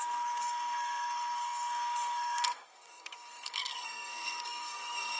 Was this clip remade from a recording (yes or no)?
yes